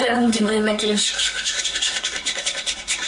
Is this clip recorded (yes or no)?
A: no